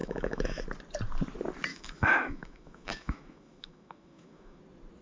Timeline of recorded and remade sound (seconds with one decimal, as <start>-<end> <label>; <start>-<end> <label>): 0.0-0.6 remade; 0.6-1.7 recorded; 1.7-4.6 remade; 4.6-5.0 recorded